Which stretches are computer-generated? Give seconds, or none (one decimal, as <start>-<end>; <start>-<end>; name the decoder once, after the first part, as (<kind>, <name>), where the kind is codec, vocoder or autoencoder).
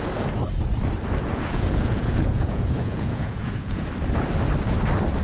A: 1.2-3.9 (vocoder, Vocos)